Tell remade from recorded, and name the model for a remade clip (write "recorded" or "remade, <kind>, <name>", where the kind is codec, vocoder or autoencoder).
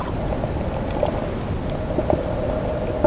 recorded